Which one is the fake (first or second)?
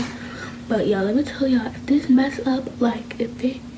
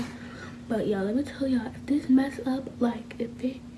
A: first